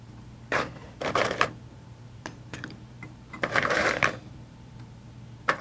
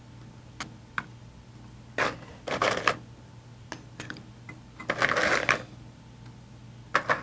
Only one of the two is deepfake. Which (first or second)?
first